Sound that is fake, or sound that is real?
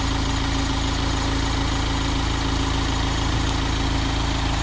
real